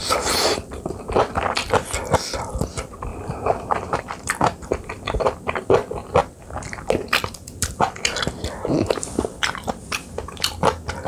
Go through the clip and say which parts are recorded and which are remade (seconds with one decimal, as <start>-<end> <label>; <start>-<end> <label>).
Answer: 0.0-6.2 remade; 6.2-7.1 recorded; 7.1-11.1 remade